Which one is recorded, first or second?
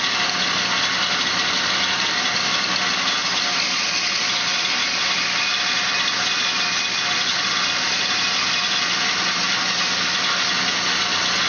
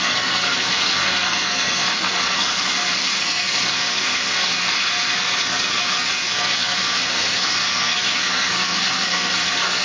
first